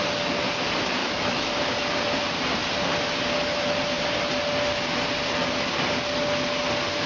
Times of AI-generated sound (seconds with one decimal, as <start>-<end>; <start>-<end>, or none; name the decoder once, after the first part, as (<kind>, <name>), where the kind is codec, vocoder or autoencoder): 1.0-1.5 (autoencoder, DAC-VAE)